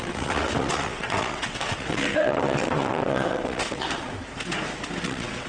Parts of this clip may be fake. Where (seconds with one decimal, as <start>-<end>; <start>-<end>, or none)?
0.0-4.1; 5.0-5.5